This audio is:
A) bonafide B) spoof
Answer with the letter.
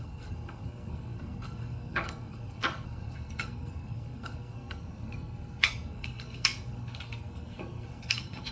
B